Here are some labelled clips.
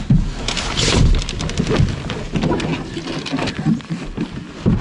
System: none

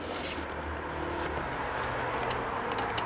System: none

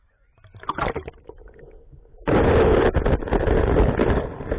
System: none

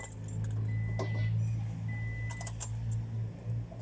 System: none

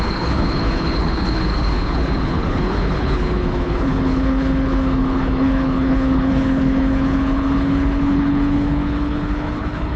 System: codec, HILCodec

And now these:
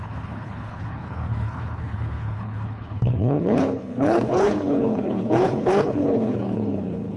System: codec, HILCodec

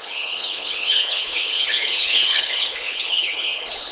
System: codec, HILCodec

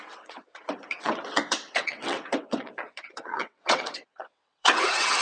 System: vocoder, WaveNeXt